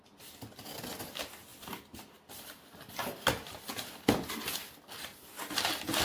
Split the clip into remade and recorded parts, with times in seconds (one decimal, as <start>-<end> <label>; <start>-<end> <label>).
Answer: 0.0-6.0 recorded